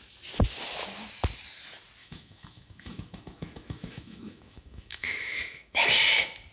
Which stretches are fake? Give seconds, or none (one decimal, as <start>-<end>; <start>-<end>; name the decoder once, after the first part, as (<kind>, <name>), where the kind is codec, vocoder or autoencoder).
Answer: 2.0-5.9 (autoencoder, DAC-VAE)